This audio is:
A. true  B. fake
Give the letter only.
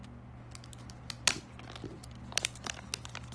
A